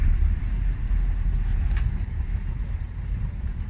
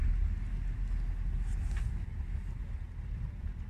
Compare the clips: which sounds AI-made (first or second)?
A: first